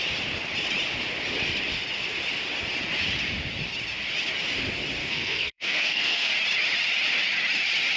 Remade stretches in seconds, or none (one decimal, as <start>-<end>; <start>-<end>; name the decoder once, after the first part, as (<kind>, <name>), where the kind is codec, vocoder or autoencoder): 5.0-6.3 (codec, SNAC)